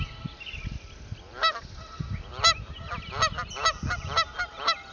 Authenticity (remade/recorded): recorded